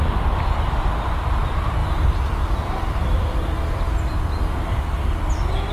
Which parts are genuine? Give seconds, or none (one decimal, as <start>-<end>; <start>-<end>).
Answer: 0.0-1.8; 5.2-5.7